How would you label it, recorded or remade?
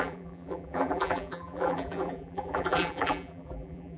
remade